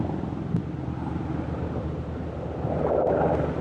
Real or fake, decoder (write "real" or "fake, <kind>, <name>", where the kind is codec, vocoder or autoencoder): real